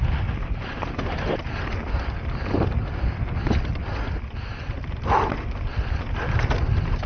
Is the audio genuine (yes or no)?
yes